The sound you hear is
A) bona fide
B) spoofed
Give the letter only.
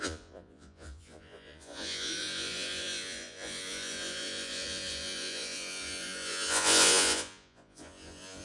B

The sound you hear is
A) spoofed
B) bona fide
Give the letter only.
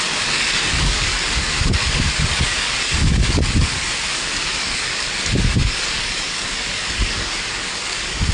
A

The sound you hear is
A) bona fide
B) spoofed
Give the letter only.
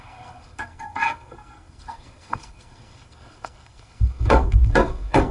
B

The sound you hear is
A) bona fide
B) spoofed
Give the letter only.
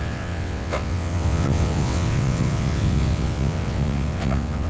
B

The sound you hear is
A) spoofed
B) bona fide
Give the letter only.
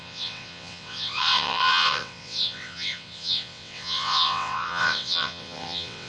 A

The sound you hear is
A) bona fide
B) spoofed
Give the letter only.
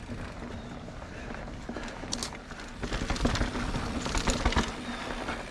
A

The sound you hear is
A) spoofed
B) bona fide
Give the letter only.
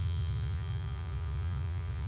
A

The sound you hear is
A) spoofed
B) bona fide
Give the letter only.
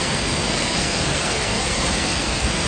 A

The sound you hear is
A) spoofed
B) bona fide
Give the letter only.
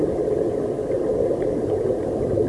B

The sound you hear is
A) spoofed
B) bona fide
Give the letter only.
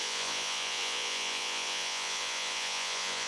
A